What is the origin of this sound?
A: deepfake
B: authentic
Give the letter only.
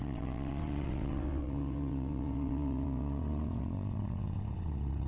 A